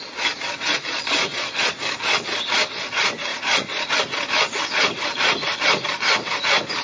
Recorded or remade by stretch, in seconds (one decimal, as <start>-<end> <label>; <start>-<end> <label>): 0.0-0.9 recorded; 0.9-1.7 remade; 1.7-3.3 recorded; 3.3-3.9 remade; 3.9-6.8 recorded

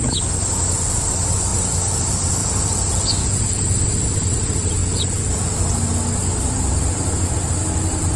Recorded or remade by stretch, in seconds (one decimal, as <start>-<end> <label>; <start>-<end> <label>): 0.0-2.4 recorded; 2.4-3.6 remade; 3.6-8.2 recorded

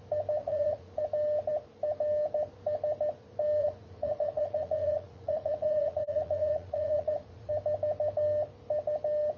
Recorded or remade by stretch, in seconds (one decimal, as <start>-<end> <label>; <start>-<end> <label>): 0.0-0.4 recorded; 0.4-1.0 remade; 1.0-3.6 recorded; 3.6-7.5 remade; 7.5-9.4 recorded

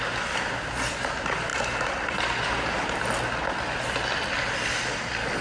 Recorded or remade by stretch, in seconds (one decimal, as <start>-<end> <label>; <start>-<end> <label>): 0.0-5.4 recorded

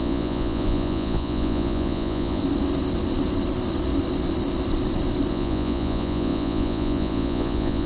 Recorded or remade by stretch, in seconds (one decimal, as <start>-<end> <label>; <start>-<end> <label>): 0.0-2.4 remade; 2.4-5.3 recorded; 5.3-7.9 remade

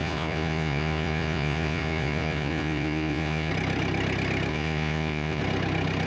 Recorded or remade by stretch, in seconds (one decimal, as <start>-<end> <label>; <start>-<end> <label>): 0.0-3.5 remade; 3.5-4.5 recorded; 4.5-5.4 remade; 5.4-6.1 recorded

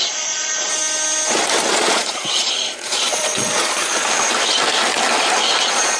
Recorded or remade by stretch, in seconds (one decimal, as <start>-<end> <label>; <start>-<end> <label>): 0.0-0.7 remade; 0.7-1.7 recorded; 1.7-4.0 remade; 4.0-5.6 recorded; 5.6-6.0 remade